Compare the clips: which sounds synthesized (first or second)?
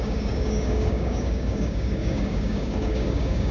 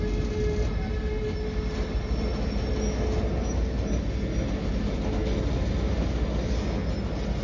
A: first